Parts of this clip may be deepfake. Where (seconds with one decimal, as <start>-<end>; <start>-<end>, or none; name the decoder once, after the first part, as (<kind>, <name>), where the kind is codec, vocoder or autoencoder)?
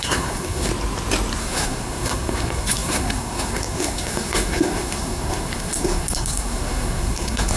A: 0.0-0.7 (codec, SNAC); 1.4-7.6